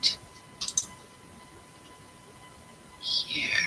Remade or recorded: recorded